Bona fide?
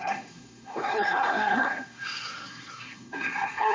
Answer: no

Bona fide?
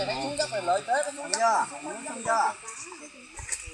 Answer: yes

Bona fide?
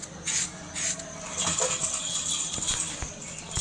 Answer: yes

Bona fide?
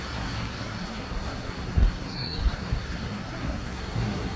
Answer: no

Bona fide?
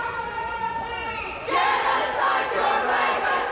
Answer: yes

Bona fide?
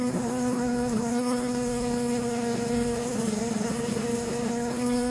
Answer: no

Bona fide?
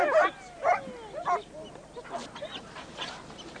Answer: yes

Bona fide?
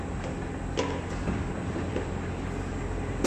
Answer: yes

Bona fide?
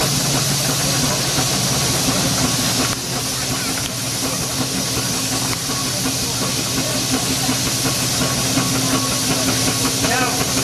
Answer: yes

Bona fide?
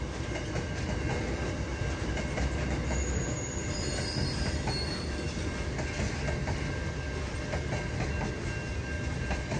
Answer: yes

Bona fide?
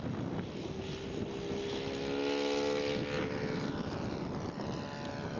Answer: yes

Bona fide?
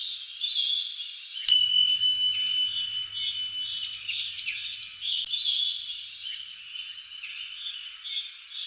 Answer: yes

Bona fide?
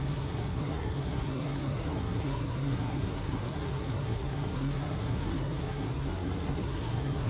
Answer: no